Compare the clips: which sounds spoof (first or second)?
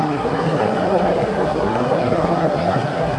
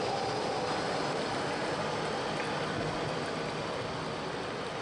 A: first